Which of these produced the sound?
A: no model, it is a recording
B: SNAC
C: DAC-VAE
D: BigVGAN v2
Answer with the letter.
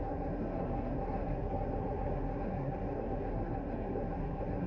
B